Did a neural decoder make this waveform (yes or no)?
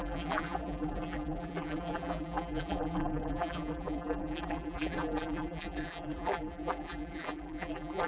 yes